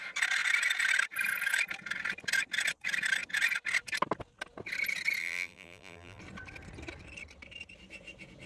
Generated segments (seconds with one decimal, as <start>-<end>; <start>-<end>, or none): 5.2-6.2